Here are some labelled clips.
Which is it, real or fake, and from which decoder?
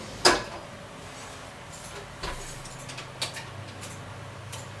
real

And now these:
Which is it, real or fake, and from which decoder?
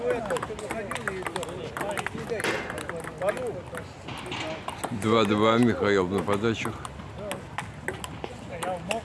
real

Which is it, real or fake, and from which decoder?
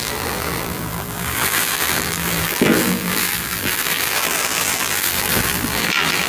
fake, vocoder, BigVGAN v2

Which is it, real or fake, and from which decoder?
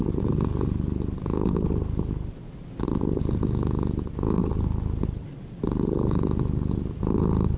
real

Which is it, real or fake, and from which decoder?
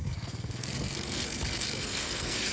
fake, codec, SNAC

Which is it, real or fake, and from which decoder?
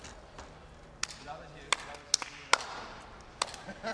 real